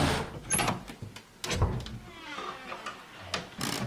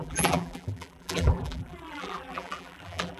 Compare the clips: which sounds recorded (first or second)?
first